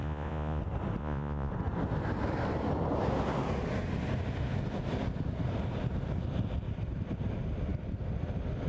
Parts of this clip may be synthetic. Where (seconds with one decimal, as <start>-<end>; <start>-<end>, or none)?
0.0-0.6; 1.0-1.5